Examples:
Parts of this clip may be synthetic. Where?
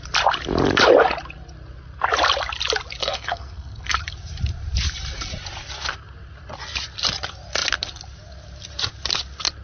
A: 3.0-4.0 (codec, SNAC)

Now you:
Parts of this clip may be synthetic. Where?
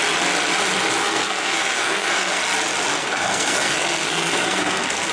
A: 1.0-2.4 (codec, SNAC); 3.0-5.1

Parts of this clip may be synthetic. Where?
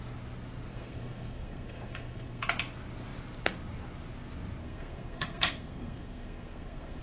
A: 0.7-2.4 (codec, SNAC); 4.6-7.0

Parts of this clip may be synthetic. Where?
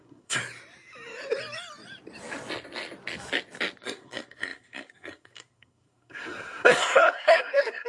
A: 0.0-0.4 (codec, SNAC); 3.8-7.9